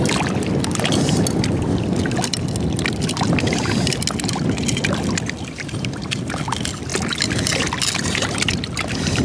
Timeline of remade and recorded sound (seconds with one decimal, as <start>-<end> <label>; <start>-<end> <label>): 0.0-9.2 recorded